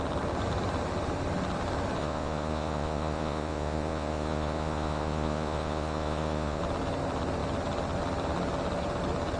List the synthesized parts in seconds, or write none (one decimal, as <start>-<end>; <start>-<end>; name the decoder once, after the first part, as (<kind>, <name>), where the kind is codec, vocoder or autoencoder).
2.0-6.6 (vocoder, Vocos)

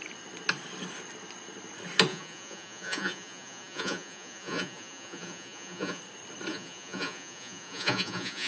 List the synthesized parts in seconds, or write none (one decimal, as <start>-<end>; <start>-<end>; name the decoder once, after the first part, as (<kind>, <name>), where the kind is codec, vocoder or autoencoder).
2.1-6.0 (vocoder, Vocos); 6.5-8.5

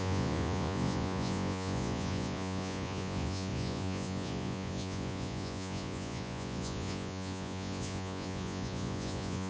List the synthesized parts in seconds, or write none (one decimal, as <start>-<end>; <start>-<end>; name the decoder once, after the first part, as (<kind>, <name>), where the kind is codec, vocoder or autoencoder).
0.0-9.5 (vocoder, Vocos)

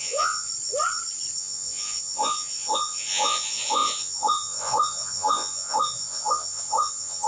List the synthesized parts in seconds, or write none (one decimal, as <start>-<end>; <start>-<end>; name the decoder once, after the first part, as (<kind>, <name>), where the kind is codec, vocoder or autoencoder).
0.0-0.5 (vocoder, Vocos); 1.4-7.3

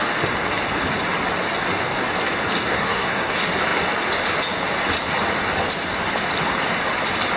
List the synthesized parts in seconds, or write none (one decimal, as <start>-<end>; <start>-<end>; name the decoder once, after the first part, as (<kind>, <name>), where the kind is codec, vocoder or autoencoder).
2.6-3.3 (codec, SNAC)

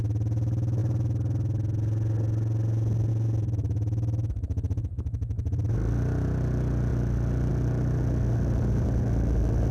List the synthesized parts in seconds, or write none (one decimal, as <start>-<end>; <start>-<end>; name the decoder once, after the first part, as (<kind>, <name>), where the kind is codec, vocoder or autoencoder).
none